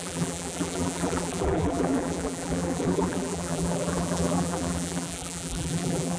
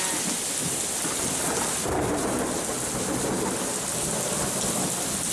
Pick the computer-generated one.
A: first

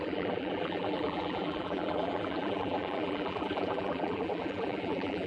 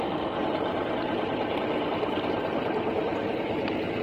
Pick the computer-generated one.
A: first